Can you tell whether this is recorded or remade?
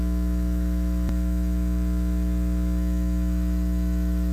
remade